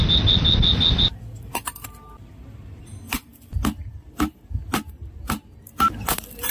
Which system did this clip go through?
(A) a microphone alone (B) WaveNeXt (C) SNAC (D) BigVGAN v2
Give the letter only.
A